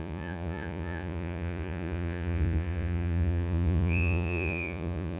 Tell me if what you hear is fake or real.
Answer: fake